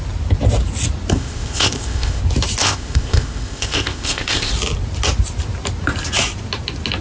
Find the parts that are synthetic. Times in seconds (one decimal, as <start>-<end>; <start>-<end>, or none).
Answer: 1.1-2.2; 2.6-4.5